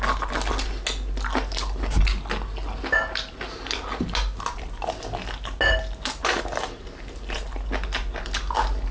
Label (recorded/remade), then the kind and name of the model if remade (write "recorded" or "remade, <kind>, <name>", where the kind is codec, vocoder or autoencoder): recorded